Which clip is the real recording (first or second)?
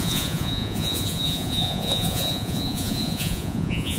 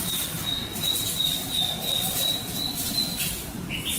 second